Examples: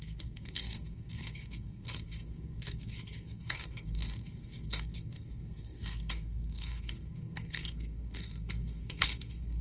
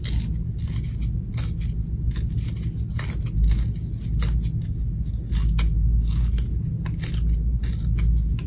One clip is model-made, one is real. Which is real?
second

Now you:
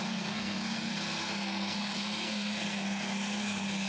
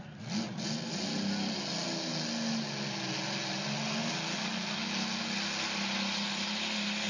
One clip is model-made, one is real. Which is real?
second